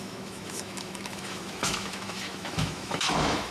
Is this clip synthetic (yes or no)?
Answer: yes